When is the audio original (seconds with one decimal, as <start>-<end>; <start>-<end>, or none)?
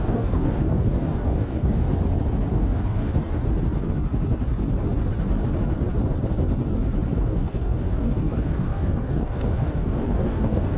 1.9-2.5; 3.4-7.2